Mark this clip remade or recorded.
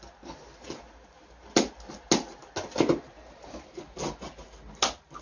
recorded